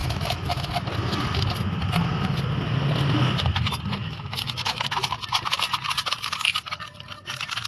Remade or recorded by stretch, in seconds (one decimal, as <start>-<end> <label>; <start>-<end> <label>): 0.0-0.7 remade; 0.7-4.0 recorded; 4.0-4.9 remade; 4.9-7.7 recorded